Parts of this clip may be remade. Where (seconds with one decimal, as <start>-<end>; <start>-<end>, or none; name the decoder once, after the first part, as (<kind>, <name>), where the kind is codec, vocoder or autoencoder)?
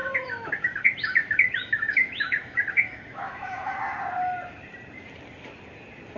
0.0-3.7 (autoencoder, DAC-VAE)